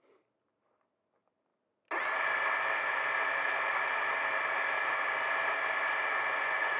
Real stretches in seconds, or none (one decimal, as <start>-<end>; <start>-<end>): 0.0-6.0